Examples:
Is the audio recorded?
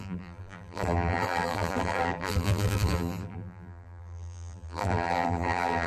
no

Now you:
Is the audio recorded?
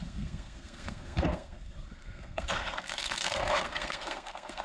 no